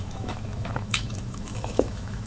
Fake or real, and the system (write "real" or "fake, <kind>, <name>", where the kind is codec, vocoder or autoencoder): fake, autoencoder, DAC-VAE